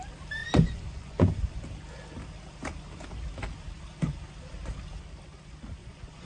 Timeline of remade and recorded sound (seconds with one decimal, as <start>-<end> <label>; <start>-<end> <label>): 0.0-0.4 recorded; 0.4-1.6 remade; 1.6-5.8 recorded; 5.8-6.3 remade